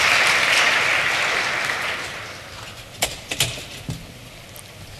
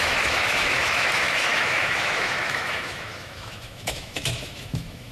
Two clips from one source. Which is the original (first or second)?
first